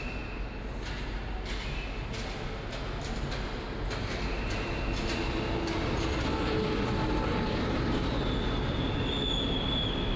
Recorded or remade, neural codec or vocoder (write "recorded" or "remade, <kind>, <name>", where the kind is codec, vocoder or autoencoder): recorded